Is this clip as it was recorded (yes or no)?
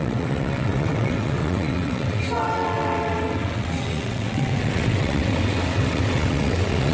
no